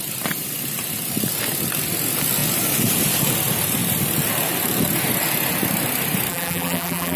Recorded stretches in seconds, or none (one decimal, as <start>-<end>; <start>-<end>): 0.0-6.3